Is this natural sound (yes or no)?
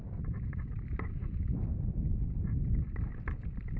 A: yes